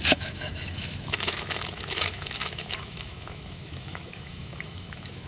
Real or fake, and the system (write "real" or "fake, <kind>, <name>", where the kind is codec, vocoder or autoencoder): fake, autoencoder, DAC-VAE